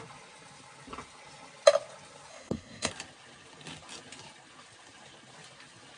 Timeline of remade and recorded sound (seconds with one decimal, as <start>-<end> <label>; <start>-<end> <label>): 0.0-2.3 recorded; 2.3-2.9 remade; 2.9-6.0 recorded